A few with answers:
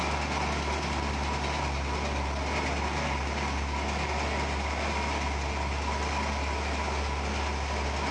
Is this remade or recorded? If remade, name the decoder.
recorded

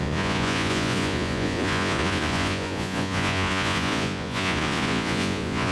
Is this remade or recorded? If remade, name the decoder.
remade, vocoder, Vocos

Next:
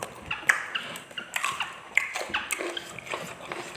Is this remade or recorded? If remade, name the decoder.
recorded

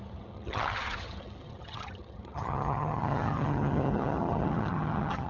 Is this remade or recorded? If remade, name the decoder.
remade, vocoder, HiFi-GAN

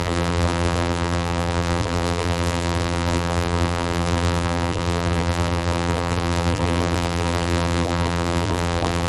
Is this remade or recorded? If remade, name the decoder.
remade, vocoder, BigVGAN v2